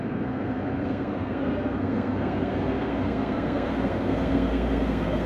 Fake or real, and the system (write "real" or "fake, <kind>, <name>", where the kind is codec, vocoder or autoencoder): fake, codec, SNAC